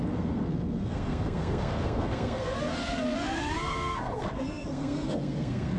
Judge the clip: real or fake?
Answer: fake